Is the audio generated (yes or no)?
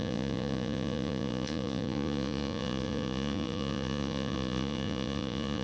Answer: yes